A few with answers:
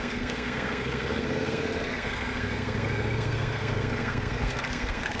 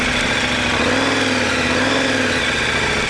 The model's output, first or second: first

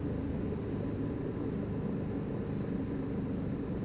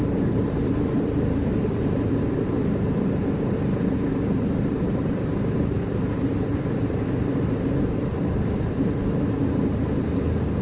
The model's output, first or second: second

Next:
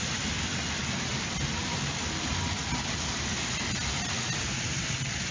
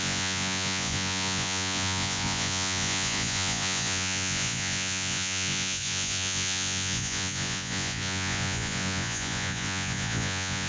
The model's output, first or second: second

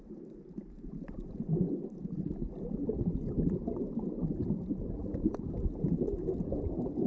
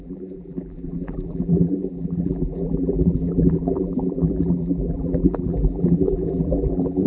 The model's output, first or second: second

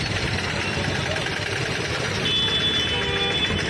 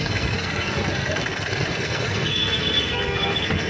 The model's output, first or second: second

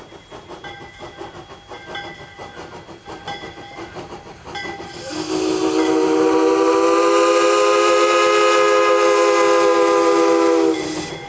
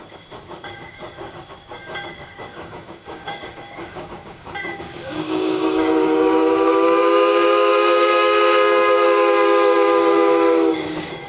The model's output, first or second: second